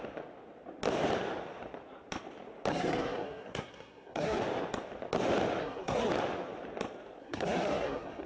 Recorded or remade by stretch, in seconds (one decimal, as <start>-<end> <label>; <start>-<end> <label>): 0.0-2.7 recorded; 2.7-4.4 remade; 4.4-5.6 recorded; 5.6-6.1 remade; 6.1-7.2 recorded; 7.2-8.3 remade